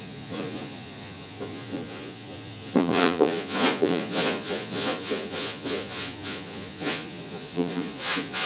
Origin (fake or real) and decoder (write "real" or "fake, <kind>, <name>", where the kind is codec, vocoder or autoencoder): fake, vocoder, Vocos